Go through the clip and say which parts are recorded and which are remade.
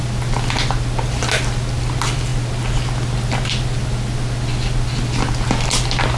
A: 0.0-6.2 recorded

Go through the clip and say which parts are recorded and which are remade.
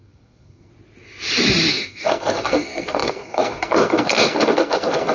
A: 0.0-0.7 remade; 0.7-1.7 recorded; 1.7-5.1 remade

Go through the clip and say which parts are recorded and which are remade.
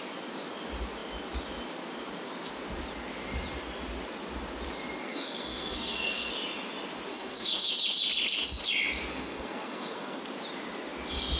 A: 0.0-5.0 recorded; 5.0-6.3 remade; 6.3-7.1 recorded; 7.1-7.7 remade; 7.7-9.1 recorded; 9.1-10.2 remade; 10.2-11.4 recorded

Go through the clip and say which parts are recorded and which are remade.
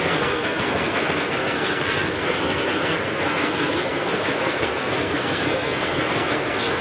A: 0.0-6.8 remade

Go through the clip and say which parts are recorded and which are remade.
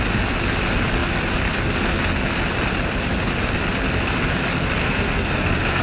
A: 0.0-4.8 recorded; 4.8-5.8 remade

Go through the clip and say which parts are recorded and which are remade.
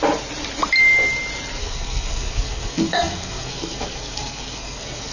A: 0.0-1.6 recorded; 1.6-5.1 remade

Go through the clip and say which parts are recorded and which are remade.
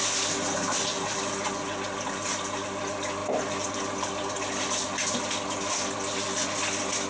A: 0.0-7.1 recorded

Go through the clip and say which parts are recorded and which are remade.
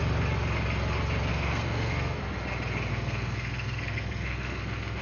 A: 0.0-1.3 recorded; 1.3-2.2 remade; 2.2-2.9 recorded; 2.9-5.0 remade